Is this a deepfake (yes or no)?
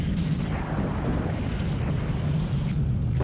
no